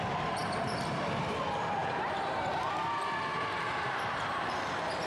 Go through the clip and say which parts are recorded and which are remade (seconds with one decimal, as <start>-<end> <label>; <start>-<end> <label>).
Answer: 0.0-0.4 recorded; 0.4-1.4 remade; 1.4-1.8 recorded; 1.8-2.7 remade; 2.7-3.3 recorded; 3.3-4.5 remade; 4.5-5.1 recorded